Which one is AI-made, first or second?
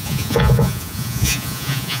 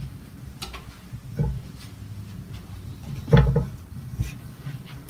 first